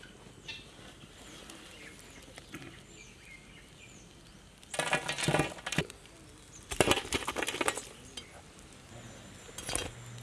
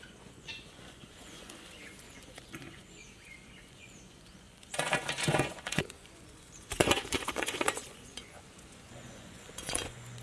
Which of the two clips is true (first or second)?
first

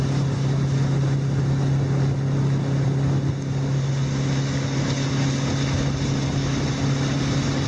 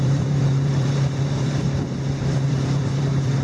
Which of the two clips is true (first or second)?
first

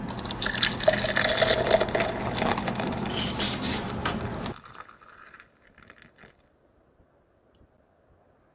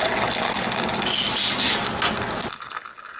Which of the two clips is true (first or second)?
second